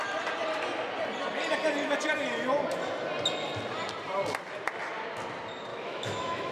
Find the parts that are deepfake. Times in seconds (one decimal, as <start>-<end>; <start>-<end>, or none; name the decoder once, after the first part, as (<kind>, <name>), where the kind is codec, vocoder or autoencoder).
5.7-6.5 (autoencoder, DAC-VAE)